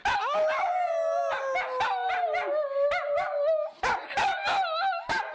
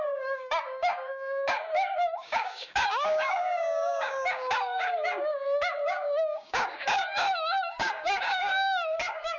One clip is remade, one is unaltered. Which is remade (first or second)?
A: second